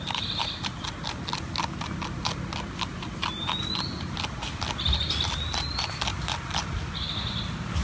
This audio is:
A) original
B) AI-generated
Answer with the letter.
A